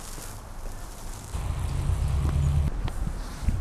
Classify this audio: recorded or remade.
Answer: recorded